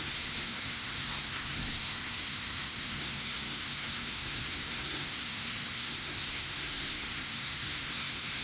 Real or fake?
fake